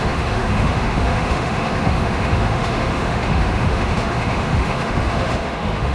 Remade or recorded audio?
remade